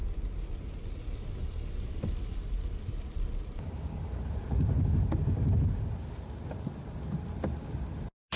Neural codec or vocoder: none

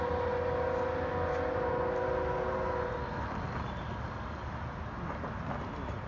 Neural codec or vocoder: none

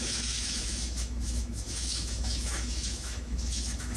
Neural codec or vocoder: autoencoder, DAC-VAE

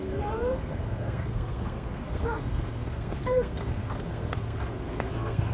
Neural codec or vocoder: codec, SNAC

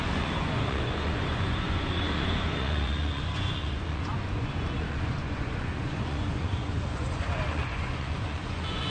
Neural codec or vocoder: vocoder, Vocos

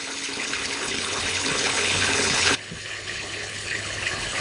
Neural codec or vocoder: codec, HILCodec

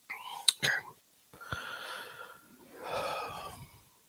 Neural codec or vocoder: vocoder, BigVGAN v2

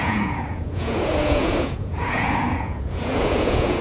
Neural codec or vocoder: vocoder, Vocos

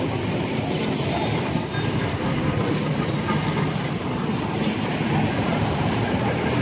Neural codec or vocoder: none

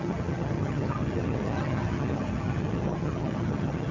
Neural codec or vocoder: vocoder, HiFi-GAN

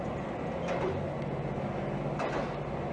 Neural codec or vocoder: none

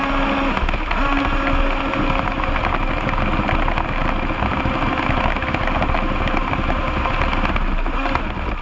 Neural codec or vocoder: none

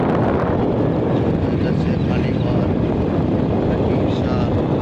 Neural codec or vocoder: none